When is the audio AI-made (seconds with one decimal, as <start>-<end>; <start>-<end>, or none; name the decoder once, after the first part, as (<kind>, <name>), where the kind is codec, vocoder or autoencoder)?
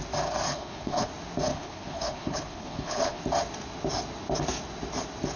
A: 0.5-1.1 (codec, HILCodec); 1.5-3.2